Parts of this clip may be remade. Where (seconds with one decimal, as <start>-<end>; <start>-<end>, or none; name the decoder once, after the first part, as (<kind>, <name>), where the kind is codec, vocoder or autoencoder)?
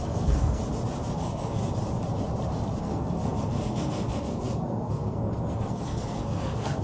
0.0-0.6 (codec, SNAC); 1.2-1.6; 2.8-6.8